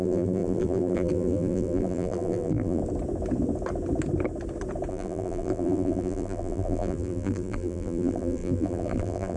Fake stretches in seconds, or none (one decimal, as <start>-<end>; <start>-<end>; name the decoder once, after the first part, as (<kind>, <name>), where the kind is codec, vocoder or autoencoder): 0.0-2.8 (vocoder, BigVGAN v2); 4.9-9.4